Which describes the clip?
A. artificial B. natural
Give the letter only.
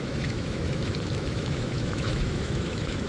A